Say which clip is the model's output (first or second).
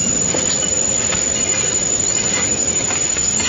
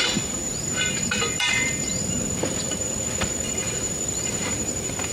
second